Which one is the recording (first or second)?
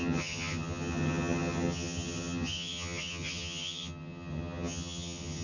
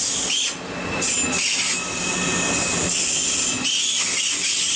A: second